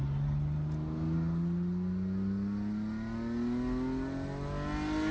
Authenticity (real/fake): real